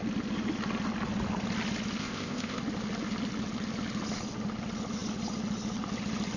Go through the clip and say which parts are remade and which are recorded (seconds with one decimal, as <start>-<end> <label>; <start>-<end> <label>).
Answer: 0.0-2.0 recorded; 2.0-2.6 remade; 2.6-6.4 recorded